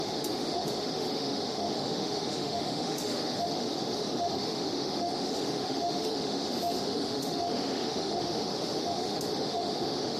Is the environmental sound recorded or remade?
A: remade